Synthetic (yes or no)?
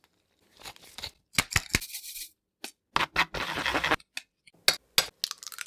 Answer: no